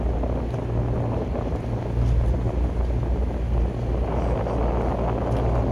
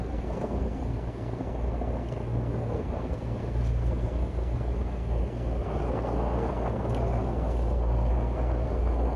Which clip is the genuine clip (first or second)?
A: first